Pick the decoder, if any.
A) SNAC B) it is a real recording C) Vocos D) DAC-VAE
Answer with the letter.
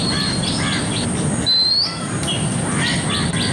B